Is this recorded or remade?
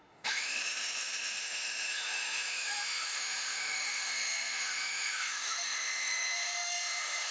remade